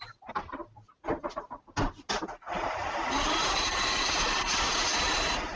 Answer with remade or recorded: recorded